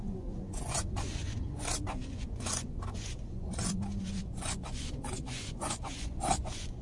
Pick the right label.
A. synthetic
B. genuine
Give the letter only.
A